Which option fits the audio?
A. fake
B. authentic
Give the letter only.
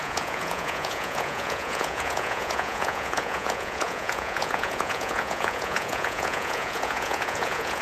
A